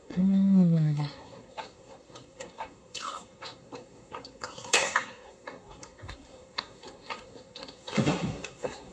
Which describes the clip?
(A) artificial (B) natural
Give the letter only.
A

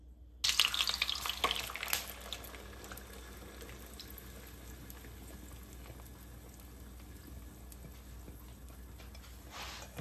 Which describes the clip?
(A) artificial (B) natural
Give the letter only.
B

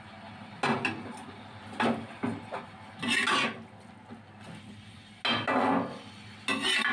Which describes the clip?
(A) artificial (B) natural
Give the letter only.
B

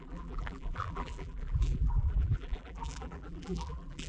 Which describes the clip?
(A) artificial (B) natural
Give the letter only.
A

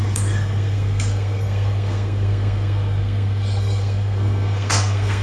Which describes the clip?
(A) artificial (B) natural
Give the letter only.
A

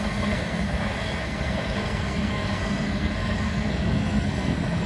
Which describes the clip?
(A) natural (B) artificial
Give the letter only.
B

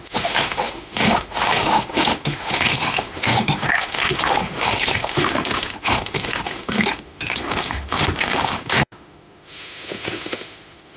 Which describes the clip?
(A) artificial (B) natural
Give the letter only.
A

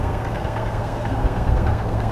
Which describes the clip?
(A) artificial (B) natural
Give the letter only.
A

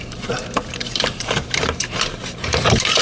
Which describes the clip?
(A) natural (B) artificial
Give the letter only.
B